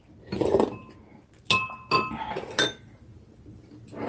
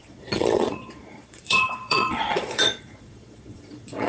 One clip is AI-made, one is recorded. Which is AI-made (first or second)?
second